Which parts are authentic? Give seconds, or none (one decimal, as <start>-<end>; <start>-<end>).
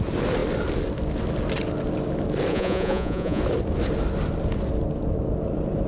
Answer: 0.0-2.5; 3.4-5.9